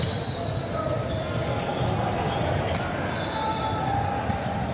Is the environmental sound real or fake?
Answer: real